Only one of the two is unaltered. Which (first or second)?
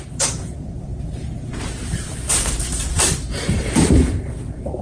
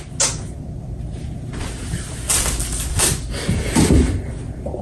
second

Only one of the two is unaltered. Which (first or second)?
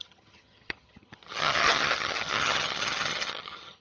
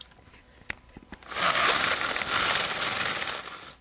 second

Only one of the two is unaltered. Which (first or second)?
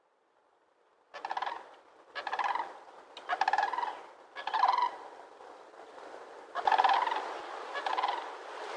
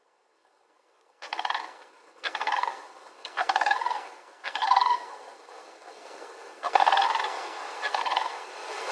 first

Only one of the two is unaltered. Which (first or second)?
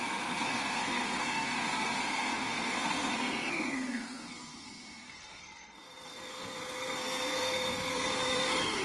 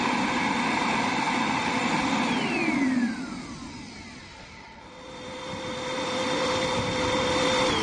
second